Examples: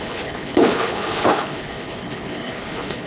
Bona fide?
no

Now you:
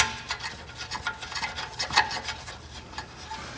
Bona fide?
yes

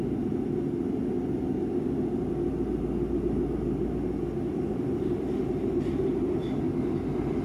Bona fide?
yes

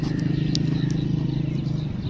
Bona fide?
yes